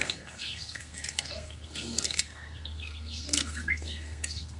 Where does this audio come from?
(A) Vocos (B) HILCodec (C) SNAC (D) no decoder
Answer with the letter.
C